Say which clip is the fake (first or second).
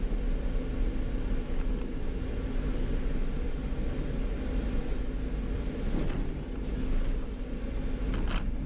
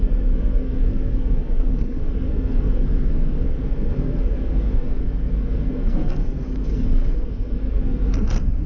second